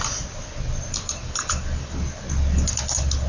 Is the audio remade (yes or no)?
no